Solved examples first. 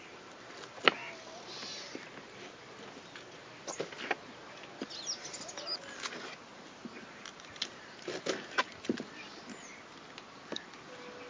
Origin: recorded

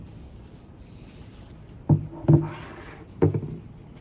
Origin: recorded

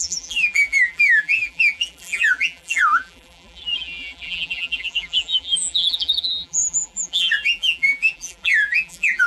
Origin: remade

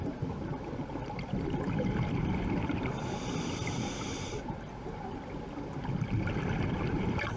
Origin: remade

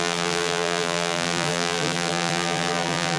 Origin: remade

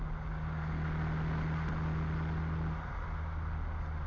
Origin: recorded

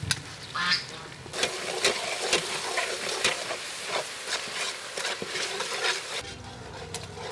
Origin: recorded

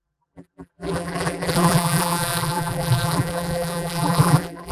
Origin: remade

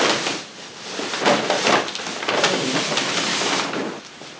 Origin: recorded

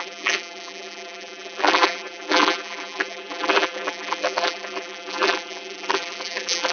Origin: remade